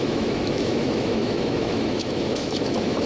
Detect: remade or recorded remade